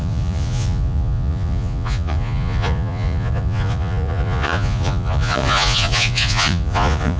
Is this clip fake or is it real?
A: fake